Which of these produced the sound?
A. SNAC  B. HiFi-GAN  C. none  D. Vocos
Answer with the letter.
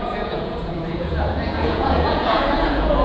D